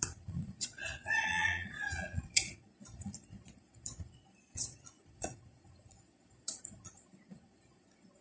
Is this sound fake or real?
fake